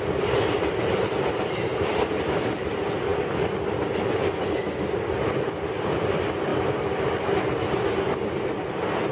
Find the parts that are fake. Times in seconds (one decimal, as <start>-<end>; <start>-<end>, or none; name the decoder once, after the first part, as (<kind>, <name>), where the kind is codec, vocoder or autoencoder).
none